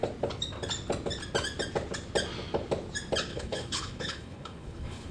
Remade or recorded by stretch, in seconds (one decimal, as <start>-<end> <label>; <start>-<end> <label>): 0.0-3.3 recorded; 3.3-5.1 remade